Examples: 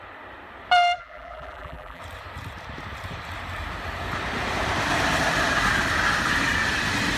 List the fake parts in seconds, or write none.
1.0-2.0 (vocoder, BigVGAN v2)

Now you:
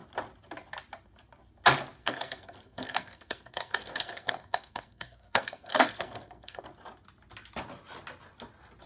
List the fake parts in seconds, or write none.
2.0-6.6 (codec, SNAC)

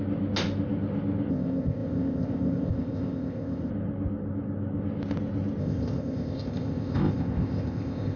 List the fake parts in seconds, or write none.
1.3-3.7 (codec, ZipCodec); 5.6-8.2

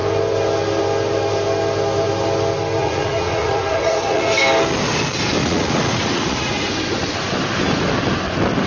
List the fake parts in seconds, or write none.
2.8-4.4 (vocoder, Vocos); 5.4-6.6

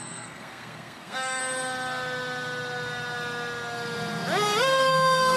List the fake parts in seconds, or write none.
0.0-1.4 (codec, SNAC); 4.6-5.4